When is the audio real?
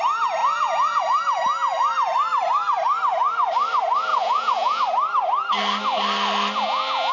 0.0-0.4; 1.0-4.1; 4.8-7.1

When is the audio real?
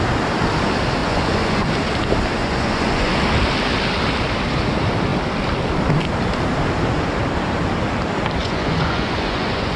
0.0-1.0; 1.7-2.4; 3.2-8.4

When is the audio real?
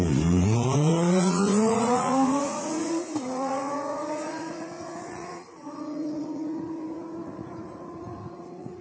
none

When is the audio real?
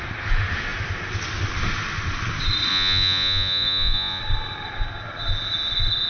0.0-2.7; 4.2-6.1